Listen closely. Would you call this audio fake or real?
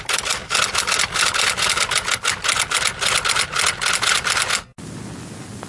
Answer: real